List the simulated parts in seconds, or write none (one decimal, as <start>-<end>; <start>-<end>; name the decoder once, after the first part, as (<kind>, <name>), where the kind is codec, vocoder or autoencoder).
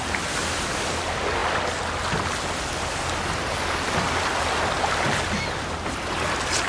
none